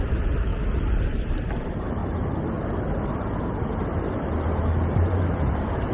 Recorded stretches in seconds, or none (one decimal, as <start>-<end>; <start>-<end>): 2.0-5.5